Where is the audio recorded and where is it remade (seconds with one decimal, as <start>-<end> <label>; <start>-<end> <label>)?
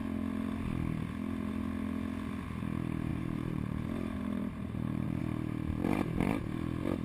0.0-3.1 recorded; 3.1-5.2 remade; 5.2-5.8 recorded; 5.8-6.4 remade; 6.4-7.0 recorded